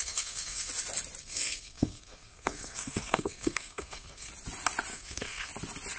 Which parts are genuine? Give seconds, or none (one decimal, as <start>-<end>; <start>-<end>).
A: 0.7-1.2; 4.3-4.9; 5.5-6.0